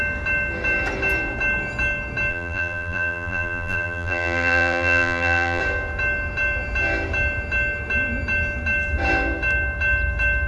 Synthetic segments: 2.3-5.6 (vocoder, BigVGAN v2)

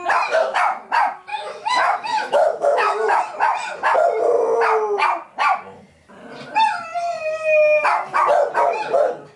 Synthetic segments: 1.3-3.2 (autoencoder, DAC-VAE)

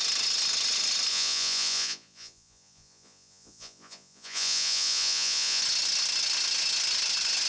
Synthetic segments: 1.1-5.6 (vocoder, Vocos)

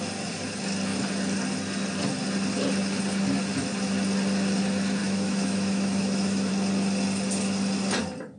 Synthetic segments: 5.0-6.5 (autoencoder, DAC-VAE)

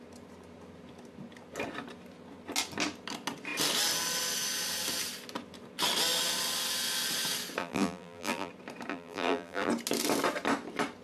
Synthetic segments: 7.6-8.5 (vocoder, BigVGAN v2); 8.9-9.7

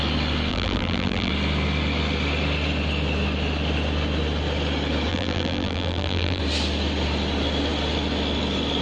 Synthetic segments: 0.5-1.3 (vocoder, BigVGAN v2); 5.1-6.4

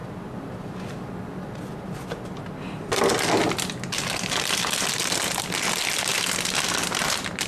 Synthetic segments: none

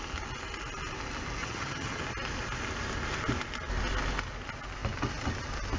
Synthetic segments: 1.4-2.0 (vocoder, HiFi-GAN)